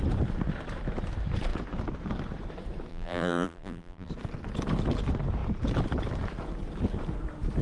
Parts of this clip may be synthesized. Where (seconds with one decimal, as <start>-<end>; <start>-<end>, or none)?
2.9-4.1